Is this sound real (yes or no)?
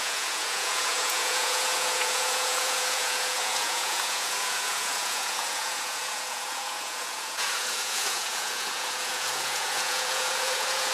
no